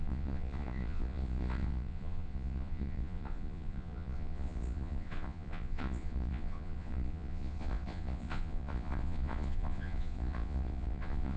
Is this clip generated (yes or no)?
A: yes